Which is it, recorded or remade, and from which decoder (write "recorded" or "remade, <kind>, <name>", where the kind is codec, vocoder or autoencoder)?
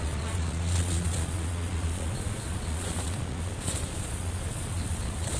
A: remade, vocoder, Vocos